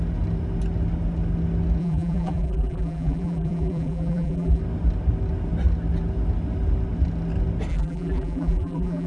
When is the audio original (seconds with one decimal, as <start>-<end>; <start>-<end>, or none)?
0.0-1.8; 4.6-7.7